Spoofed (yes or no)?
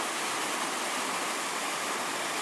no